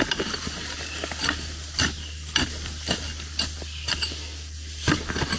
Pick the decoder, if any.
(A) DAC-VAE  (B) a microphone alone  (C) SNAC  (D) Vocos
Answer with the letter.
B